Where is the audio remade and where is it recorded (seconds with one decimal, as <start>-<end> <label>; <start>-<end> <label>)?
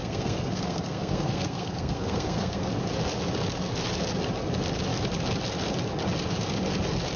0.0-2.7 remade; 2.7-7.2 recorded